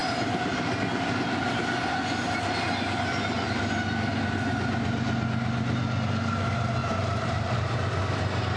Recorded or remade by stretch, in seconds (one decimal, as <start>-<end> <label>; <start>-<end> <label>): 0.0-0.7 remade; 0.7-6.8 recorded; 6.8-7.7 remade; 7.7-8.6 recorded